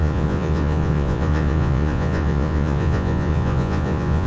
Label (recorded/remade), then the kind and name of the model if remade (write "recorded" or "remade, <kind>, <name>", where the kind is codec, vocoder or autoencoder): remade, vocoder, Vocos